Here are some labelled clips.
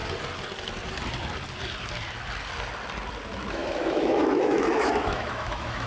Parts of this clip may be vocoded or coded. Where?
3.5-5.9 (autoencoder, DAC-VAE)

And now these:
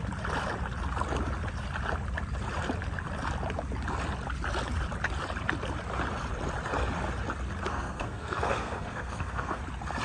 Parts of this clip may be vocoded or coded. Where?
7.7-9.6 (codec, SNAC)